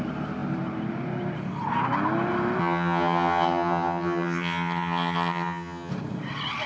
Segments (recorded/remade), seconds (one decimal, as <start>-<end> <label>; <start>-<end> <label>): 0.0-2.6 recorded; 2.6-5.9 remade; 5.9-6.7 recorded